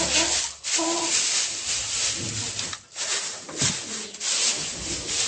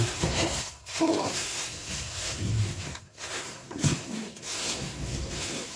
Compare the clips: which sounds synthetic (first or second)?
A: second